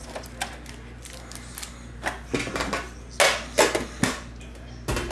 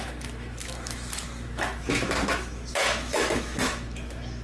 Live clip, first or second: first